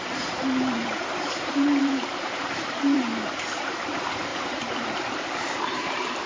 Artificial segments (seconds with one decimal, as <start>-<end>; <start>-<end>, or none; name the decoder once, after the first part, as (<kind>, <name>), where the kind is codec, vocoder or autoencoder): 0.0-6.3 (vocoder, BigVGAN v2)